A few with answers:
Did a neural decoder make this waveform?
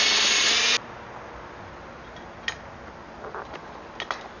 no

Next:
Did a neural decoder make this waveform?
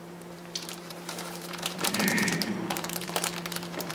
yes